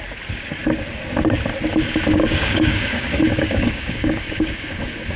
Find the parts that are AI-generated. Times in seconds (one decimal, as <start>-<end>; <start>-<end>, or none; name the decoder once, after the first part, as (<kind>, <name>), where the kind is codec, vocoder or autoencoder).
2.1-5.2 (codec, DAC)